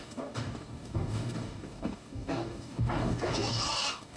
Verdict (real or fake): fake